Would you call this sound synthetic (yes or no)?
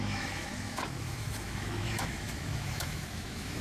yes